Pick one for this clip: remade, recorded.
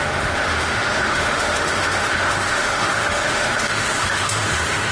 remade